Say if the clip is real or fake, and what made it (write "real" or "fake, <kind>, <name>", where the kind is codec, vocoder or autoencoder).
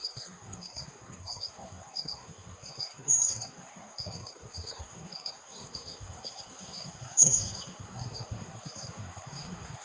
fake, codec, SNAC